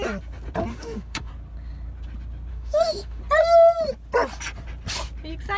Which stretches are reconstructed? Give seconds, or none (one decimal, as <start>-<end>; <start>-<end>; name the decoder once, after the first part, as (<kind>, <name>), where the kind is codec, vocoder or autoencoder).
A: 0.7-1.3 (autoencoder, DAC-VAE); 2.5-3.2